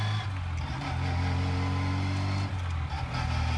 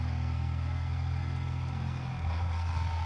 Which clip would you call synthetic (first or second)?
second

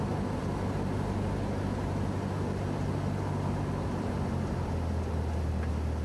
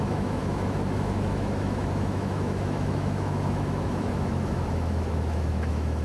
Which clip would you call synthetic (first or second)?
second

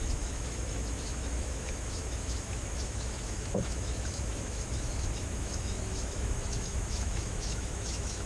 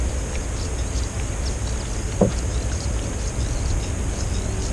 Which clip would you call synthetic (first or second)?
first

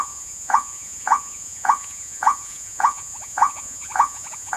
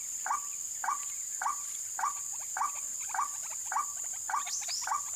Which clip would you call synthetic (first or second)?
first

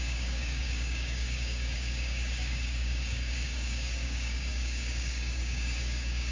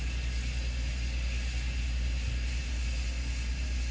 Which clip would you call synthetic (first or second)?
first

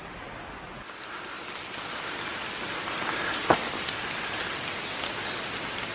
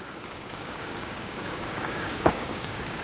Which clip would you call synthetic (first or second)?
second